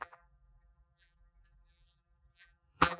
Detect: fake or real fake